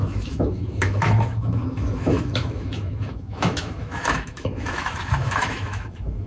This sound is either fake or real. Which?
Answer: fake